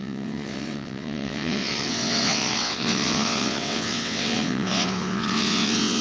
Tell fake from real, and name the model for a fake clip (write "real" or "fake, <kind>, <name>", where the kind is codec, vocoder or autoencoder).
fake, vocoder, WaveNeXt